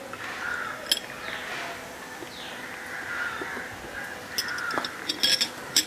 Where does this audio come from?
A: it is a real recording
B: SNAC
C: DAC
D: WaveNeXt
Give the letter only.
A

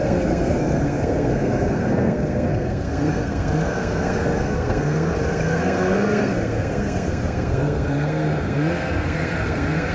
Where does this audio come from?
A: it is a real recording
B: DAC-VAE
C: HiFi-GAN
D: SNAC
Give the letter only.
D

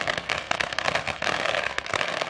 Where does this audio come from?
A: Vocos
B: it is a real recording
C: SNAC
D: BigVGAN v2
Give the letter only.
C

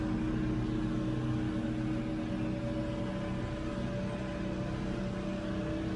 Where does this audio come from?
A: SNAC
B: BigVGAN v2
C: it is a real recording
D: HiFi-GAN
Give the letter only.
C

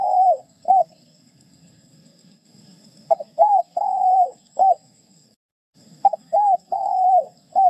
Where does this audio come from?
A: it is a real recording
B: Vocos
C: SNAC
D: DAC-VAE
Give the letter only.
C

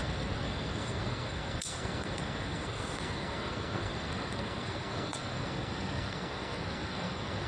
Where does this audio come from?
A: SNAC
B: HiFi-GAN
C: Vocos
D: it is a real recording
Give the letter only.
A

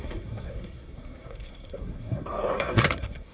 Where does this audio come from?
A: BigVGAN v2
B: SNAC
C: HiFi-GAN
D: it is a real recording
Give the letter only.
B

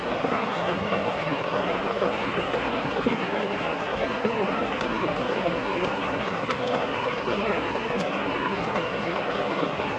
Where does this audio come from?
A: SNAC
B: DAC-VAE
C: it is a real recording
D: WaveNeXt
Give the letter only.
A